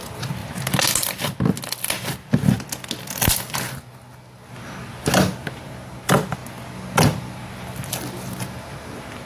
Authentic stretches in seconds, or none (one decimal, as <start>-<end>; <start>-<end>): 0.0-9.3